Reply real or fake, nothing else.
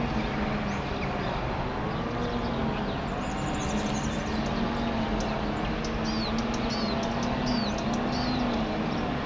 real